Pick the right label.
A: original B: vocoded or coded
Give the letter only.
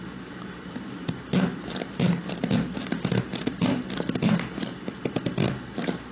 A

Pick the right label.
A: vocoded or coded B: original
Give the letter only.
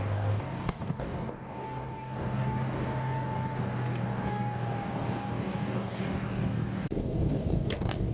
A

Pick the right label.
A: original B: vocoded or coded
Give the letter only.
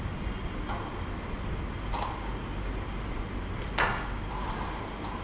A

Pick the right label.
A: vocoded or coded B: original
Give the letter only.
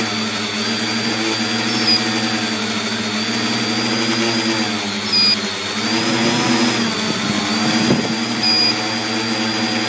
B